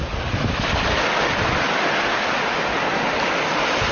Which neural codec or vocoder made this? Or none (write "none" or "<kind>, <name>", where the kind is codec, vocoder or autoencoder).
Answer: none